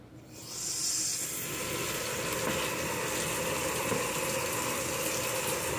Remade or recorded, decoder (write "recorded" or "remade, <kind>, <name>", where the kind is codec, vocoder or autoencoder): recorded